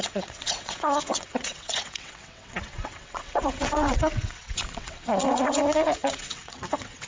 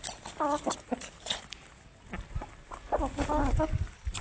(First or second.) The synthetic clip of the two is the first